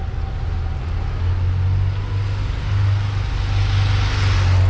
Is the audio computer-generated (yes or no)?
no